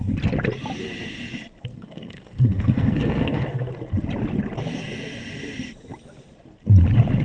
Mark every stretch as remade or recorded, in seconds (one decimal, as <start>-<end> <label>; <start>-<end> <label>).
0.0-1.7 recorded; 1.7-3.7 remade; 3.7-7.2 recorded